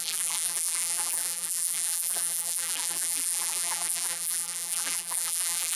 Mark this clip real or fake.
fake